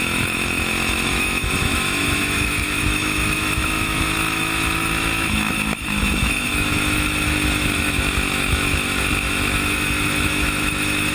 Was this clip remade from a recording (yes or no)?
yes